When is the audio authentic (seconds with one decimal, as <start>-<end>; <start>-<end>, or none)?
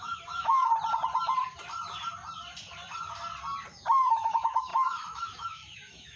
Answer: 0.7-3.7